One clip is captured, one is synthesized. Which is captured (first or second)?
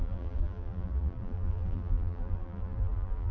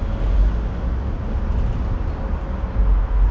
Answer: second